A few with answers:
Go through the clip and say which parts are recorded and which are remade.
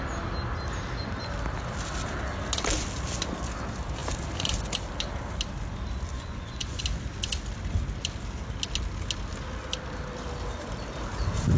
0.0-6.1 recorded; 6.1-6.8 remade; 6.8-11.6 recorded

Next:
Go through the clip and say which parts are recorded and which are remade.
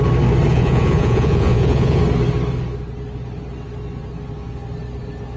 0.0-0.5 recorded; 0.5-2.0 remade; 2.0-5.4 recorded